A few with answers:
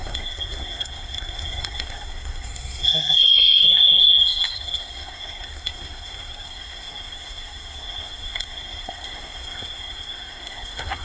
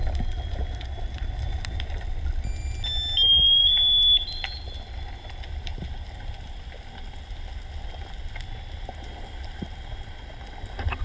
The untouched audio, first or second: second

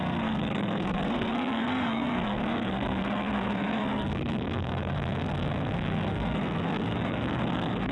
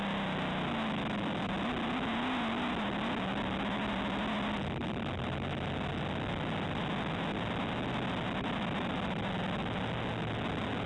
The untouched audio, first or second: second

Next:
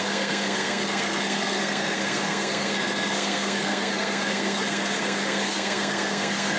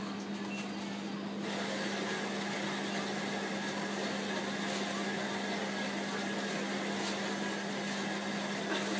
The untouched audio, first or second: second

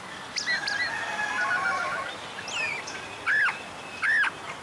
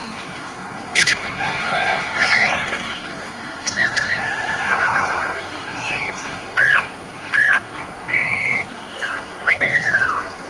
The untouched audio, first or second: first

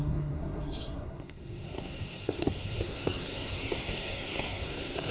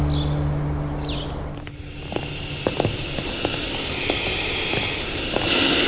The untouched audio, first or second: second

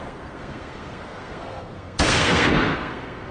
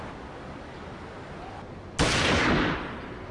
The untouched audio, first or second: second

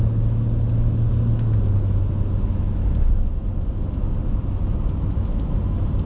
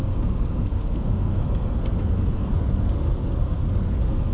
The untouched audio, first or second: first